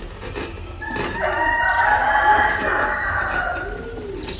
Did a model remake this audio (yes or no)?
no